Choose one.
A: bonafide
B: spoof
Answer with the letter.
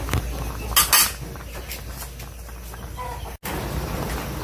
A